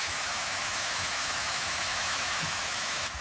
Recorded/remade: remade